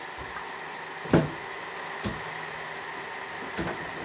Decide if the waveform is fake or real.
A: real